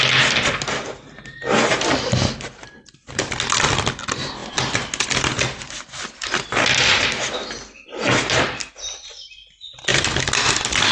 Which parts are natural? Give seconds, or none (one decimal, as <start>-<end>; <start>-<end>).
0.0-10.9